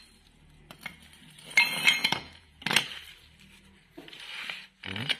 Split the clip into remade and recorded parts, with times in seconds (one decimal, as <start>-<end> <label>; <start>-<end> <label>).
0.0-2.0 recorded; 2.0-2.6 remade; 2.6-5.2 recorded